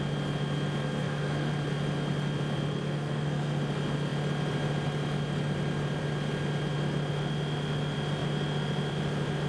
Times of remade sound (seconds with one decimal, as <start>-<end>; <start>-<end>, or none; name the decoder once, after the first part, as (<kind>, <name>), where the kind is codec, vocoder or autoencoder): 0.8-1.5 (codec, SNAC); 2.7-3.6